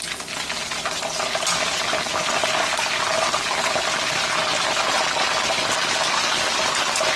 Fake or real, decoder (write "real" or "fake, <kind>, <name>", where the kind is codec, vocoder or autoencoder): real